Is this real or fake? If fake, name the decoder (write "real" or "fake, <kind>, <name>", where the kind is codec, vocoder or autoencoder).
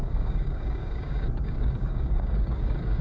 fake, codec, DAC